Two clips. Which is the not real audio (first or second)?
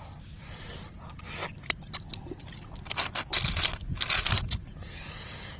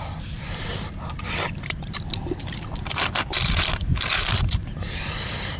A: second